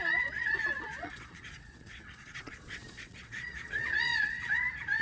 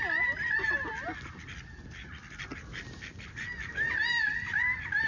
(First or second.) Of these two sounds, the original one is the second